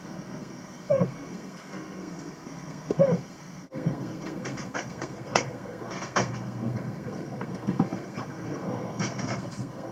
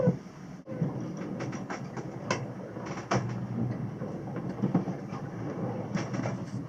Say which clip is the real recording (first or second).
second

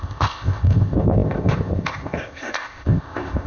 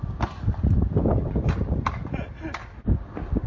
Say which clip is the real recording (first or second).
second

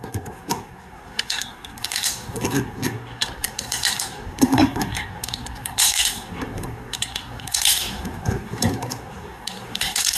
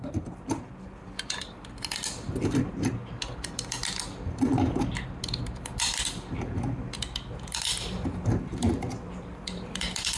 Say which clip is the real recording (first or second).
second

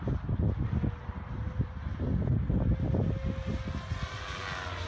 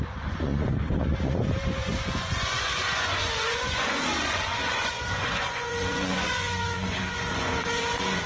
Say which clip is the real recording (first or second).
first